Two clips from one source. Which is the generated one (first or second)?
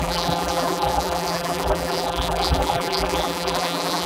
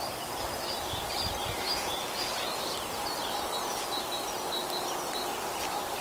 first